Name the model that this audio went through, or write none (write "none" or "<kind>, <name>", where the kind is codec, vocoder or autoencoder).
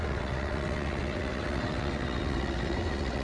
vocoder, WaveNeXt